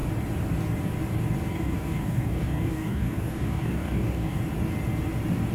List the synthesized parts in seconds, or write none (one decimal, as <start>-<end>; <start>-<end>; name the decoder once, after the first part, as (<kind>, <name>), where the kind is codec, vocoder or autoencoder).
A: 1.5-4.4 (codec, DAC)